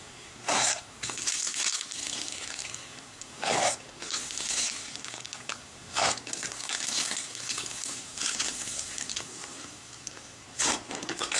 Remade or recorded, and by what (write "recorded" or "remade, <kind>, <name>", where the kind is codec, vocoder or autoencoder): remade, codec, SNAC